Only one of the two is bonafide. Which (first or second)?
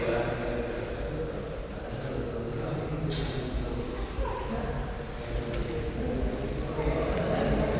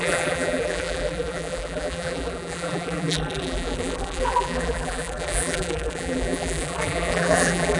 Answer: first